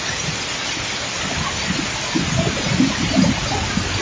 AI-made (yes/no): no